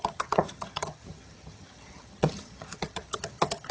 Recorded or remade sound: remade